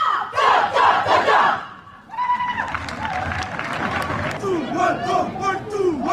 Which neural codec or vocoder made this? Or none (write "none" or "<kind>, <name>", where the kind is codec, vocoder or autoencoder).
none